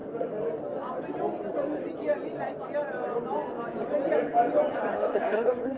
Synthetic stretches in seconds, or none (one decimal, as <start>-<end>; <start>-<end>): 4.9-5.8